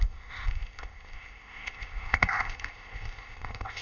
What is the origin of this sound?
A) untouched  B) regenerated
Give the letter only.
B